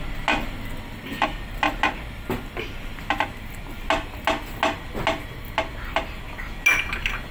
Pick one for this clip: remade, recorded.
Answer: recorded